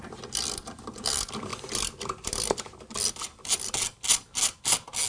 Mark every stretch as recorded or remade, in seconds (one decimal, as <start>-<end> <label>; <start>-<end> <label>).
0.0-5.1 recorded